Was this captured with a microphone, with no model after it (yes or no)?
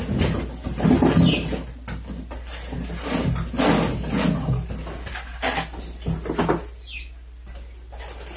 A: yes